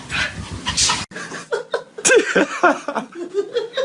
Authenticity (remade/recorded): recorded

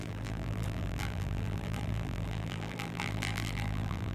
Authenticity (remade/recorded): remade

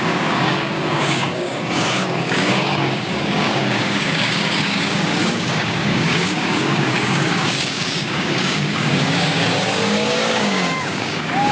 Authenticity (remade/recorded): remade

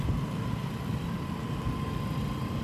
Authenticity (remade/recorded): recorded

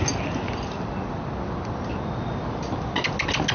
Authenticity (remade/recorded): recorded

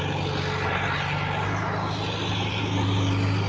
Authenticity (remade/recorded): recorded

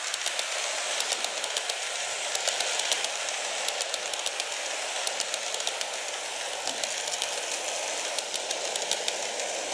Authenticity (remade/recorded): recorded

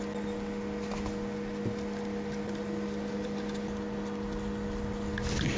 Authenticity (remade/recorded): recorded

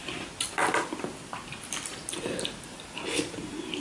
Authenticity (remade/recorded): recorded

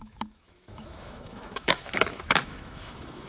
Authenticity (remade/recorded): remade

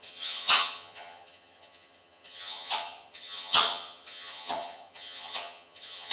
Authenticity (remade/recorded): remade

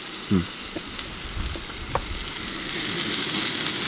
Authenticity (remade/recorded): recorded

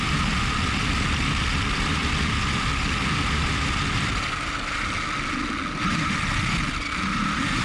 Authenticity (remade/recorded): recorded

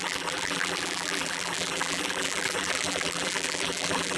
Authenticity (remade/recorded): remade